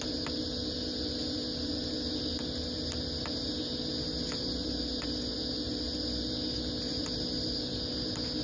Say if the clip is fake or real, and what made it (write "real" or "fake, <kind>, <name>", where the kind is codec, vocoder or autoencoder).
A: real